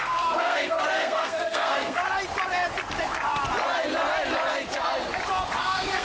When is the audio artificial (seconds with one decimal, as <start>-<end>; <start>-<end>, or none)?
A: 0.0-2.0; 5.6-6.0